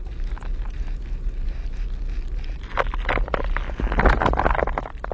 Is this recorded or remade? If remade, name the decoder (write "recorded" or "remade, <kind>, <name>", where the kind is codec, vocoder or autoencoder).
recorded